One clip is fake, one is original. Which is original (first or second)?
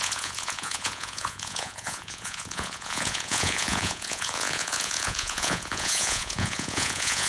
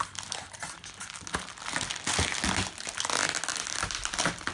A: second